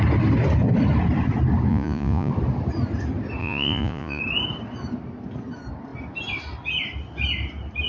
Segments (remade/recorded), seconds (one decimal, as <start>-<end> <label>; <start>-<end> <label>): 0.0-1.7 recorded; 1.7-2.3 remade; 2.3-3.4 recorded; 3.4-4.2 remade; 4.2-7.9 recorded

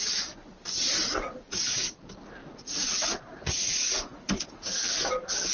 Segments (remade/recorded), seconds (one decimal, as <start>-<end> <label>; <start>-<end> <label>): 0.0-1.0 recorded; 1.0-1.9 remade; 1.9-2.4 recorded; 2.4-4.4 remade; 4.4-5.5 recorded

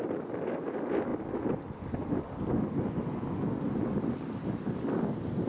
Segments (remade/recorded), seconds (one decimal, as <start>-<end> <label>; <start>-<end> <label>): 0.0-5.5 recorded

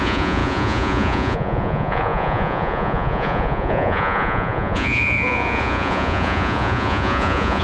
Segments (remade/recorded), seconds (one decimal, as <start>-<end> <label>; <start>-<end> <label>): 0.0-7.6 remade

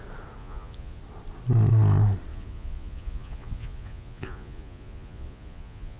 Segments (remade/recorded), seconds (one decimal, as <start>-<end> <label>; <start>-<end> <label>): 0.0-0.4 recorded; 0.4-1.0 remade; 1.0-2.3 recorded; 2.3-6.0 remade